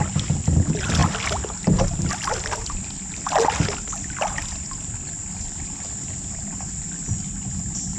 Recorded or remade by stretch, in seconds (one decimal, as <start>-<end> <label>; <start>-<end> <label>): 0.0-8.0 recorded